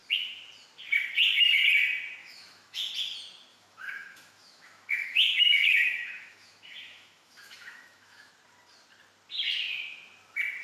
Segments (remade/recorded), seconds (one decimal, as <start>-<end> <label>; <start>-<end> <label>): 0.0-2.2 recorded; 2.2-2.9 remade; 2.9-3.5 recorded; 3.5-8.3 remade; 8.3-10.6 recorded